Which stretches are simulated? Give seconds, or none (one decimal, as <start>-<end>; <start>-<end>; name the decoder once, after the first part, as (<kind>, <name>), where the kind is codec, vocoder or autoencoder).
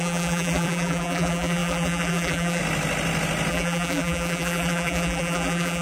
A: 0.0-2.6 (vocoder, BigVGAN v2); 3.5-5.8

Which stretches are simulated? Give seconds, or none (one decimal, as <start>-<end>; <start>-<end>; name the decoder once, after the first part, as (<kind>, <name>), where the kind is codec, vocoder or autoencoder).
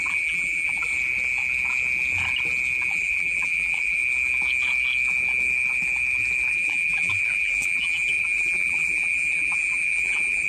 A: 0.0-0.9 (vocoder, BigVGAN v2); 2.9-4.0; 6.5-10.5